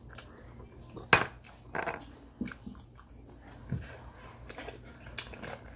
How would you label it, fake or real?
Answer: real